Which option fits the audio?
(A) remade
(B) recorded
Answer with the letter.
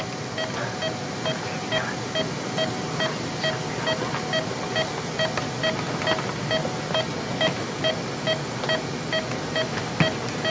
B